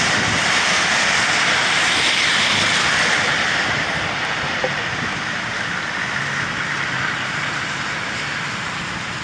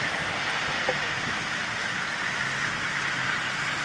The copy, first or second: first